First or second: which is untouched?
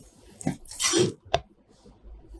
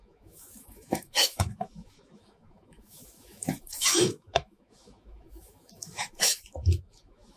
first